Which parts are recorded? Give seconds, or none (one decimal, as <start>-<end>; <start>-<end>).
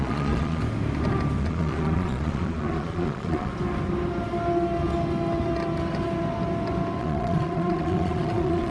0.6-1.4; 3.5-7.0